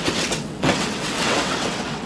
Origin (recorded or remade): remade